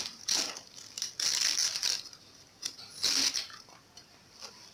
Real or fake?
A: fake